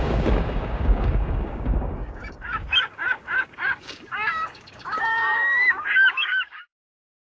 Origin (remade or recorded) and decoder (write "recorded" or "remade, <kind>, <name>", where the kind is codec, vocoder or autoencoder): remade, codec, DAC